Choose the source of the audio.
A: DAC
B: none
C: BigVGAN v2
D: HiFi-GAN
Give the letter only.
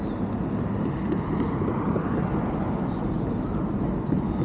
B